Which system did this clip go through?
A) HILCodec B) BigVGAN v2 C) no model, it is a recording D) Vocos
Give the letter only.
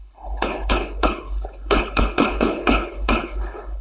A